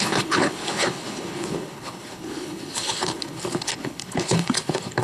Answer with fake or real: fake